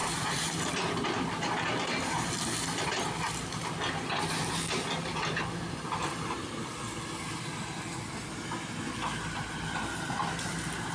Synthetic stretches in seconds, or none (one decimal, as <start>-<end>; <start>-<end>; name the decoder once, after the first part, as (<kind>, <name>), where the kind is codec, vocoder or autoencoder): none